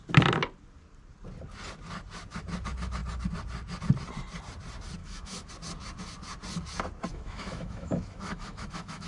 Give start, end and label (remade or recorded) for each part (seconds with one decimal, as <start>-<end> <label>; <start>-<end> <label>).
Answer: 0.0-5.0 recorded; 5.0-5.5 remade; 5.5-7.1 recorded; 7.1-9.1 remade